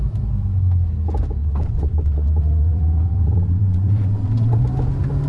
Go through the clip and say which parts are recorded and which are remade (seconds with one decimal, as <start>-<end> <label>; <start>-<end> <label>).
0.0-1.4 recorded; 1.4-4.6 remade; 4.6-5.3 recorded